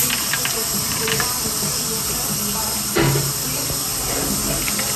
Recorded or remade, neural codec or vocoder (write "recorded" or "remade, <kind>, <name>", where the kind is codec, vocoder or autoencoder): recorded